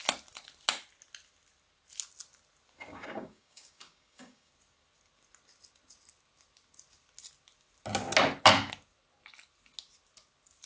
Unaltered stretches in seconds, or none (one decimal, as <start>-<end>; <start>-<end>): 0.0-2.9; 4.5-10.7